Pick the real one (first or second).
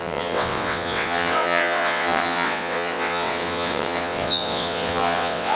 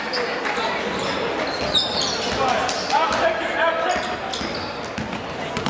second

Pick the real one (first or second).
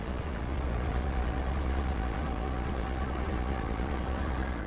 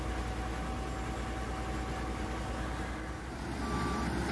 second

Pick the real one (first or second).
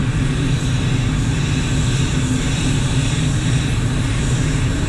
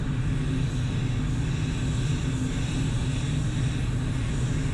second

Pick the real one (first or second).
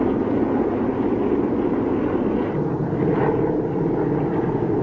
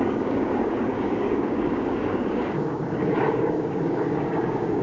first